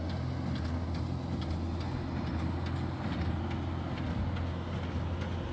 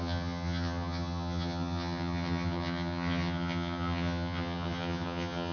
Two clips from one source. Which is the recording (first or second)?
first